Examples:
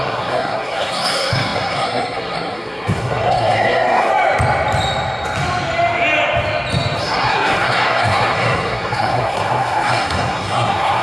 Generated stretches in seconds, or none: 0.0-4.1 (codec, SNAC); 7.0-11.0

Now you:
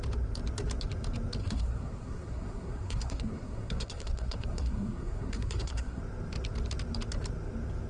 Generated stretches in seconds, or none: 1.4-6.0 (codec, SNAC)

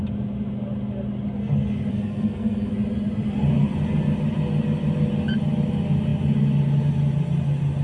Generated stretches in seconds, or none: 1.9-2.7 (codec, SNAC)

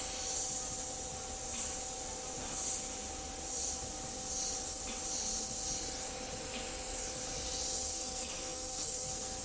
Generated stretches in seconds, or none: 7.9-9.4 (codec, SNAC)

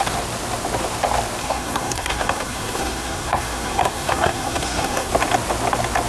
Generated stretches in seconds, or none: 1.4-5.1 (codec, SNAC)